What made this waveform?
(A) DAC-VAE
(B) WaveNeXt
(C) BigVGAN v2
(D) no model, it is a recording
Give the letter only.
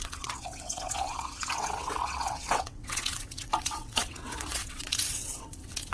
B